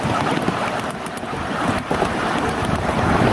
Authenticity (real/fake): real